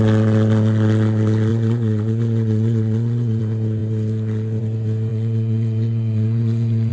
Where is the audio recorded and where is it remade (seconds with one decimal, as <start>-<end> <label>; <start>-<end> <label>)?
0.0-1.5 recorded; 1.5-3.4 remade; 3.4-5.1 recorded; 5.1-6.9 remade